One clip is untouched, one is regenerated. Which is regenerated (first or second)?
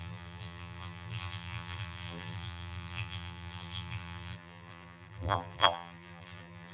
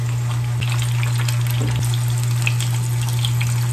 first